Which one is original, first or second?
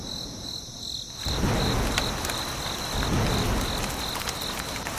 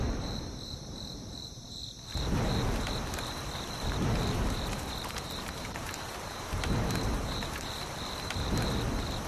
first